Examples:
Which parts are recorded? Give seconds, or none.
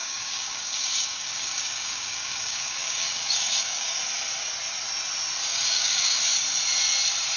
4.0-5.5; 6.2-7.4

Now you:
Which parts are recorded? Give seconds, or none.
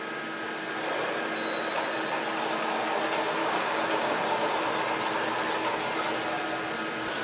0.0-3.4; 4.5-7.2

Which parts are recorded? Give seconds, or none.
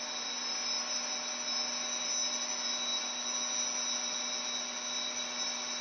0.0-5.8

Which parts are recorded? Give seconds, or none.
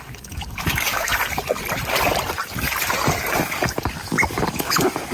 1.1-3.4